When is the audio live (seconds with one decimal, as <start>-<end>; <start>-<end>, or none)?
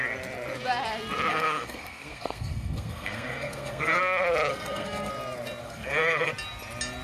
0.0-1.3; 4.0-4.5; 5.1-5.6; 6.3-7.0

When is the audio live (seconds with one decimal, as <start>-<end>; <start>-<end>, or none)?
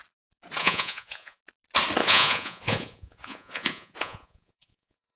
0.0-0.6; 1.4-2.0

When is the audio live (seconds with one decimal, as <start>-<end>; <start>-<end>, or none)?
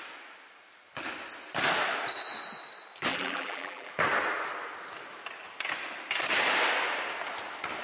0.0-3.1; 3.9-7.8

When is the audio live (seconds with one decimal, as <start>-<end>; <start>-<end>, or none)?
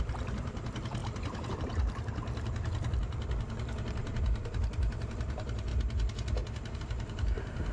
2.0-4.5; 5.7-6.8